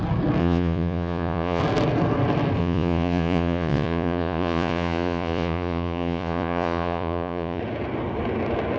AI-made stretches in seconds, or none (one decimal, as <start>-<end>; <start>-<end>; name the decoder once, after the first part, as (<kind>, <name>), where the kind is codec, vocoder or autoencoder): 0.4-1.6 (vocoder, Vocos); 2.6-7.6